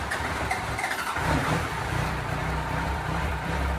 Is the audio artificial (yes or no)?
yes